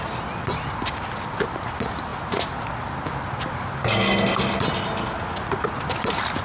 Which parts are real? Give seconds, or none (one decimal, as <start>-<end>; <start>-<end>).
0.0-6.4